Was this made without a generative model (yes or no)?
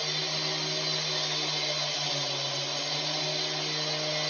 yes